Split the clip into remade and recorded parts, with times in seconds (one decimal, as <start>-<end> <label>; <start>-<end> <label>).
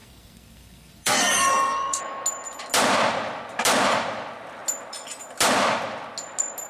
0.0-2.0 remade; 2.0-6.7 recorded